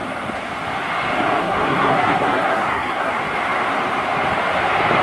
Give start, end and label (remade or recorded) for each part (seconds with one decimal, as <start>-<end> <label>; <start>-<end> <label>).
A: 0.0-1.4 recorded; 1.4-3.1 remade; 3.1-5.0 recorded